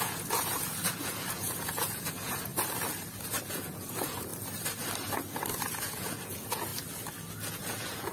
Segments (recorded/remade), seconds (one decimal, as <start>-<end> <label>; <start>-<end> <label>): 0.0-2.5 remade; 2.5-3.5 recorded; 3.5-4.3 remade; 4.3-5.8 recorded; 5.8-6.7 remade; 6.7-7.3 recorded; 7.3-8.1 remade